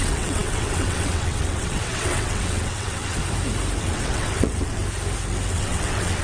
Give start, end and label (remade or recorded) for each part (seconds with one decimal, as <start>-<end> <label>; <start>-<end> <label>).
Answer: 0.0-3.2 remade; 3.2-3.8 recorded; 3.8-4.8 remade; 4.8-5.5 recorded; 5.5-6.2 remade